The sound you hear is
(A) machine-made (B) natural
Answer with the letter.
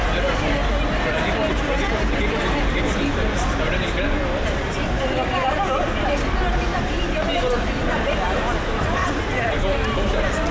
B